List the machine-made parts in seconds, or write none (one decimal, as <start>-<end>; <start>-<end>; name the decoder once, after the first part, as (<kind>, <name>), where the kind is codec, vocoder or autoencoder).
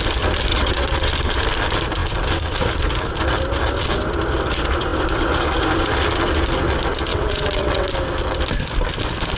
0.5-1.1 (vocoder, WaveNeXt); 7.1-7.9